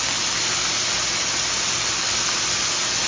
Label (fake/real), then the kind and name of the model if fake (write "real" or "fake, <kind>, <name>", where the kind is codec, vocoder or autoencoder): real